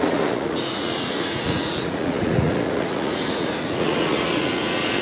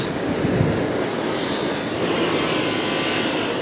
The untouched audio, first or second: second